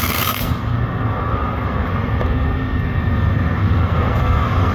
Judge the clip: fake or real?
fake